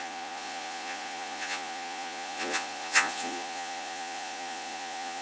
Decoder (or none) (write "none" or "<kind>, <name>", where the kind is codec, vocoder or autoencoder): vocoder, Vocos